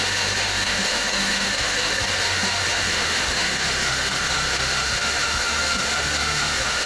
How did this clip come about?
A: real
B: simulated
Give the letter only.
B